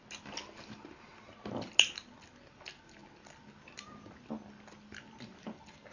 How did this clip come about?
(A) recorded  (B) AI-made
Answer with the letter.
A